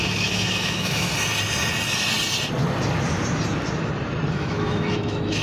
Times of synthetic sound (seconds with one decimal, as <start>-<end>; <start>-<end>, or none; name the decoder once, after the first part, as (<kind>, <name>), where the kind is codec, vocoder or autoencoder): 0.0-1.1 (autoencoder, DAC-VAE); 4.3-5.4

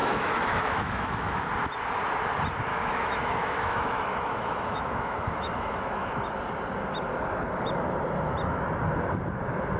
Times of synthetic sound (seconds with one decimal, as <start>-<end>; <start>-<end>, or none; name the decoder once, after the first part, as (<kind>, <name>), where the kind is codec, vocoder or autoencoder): 0.0-1.4 (autoencoder, DAC-VAE); 2.7-6.1